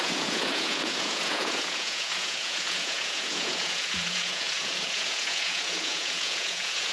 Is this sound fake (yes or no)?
yes